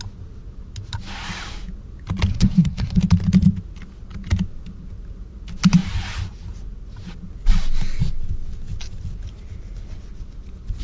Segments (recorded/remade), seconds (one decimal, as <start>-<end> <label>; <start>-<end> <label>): 0.0-2.3 recorded; 2.3-3.0 remade; 3.0-10.8 recorded

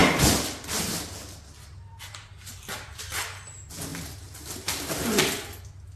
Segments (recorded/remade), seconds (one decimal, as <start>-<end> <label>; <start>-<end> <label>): 0.0-6.0 recorded

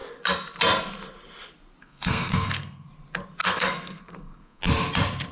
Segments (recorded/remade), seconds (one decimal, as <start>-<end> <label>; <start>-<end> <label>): 0.0-1.8 recorded; 1.8-2.9 remade; 2.9-3.4 recorded; 3.4-4.6 remade; 4.6-5.3 recorded

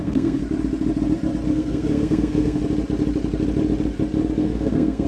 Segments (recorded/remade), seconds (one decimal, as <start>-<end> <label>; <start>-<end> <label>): 0.0-0.4 remade; 0.4-1.5 recorded; 1.5-2.6 remade; 2.6-4.4 recorded; 4.4-5.1 remade